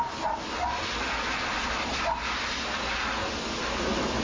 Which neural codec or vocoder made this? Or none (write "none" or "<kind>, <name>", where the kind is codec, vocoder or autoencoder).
none